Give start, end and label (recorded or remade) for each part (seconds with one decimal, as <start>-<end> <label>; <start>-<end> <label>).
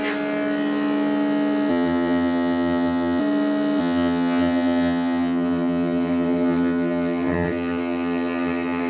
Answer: 0.0-1.7 recorded; 1.7-3.2 remade; 3.2-3.8 recorded; 3.8-8.9 remade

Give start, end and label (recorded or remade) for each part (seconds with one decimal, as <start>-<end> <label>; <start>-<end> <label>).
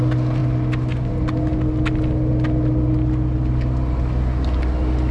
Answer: 0.0-5.1 recorded